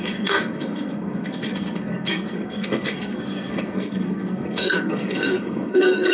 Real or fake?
fake